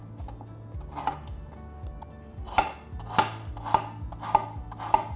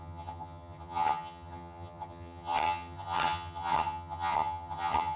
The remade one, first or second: second